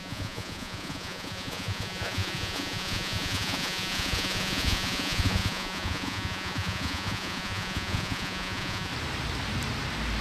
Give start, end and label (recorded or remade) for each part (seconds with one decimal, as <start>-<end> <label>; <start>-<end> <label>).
0.0-8.9 remade; 8.9-10.2 recorded